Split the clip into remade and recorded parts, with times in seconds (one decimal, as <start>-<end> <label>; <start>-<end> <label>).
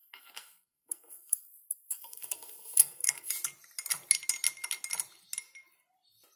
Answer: 0.0-3.3 remade; 3.3-6.4 recorded